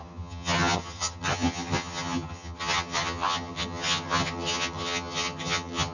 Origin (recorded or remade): remade